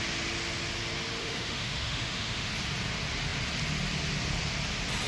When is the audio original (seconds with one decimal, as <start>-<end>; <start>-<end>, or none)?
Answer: 0.0-1.2; 2.5-5.1